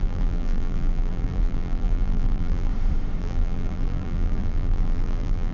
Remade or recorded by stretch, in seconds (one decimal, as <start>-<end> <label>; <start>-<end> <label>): 0.0-2.7 remade; 2.7-3.2 recorded; 3.2-5.5 remade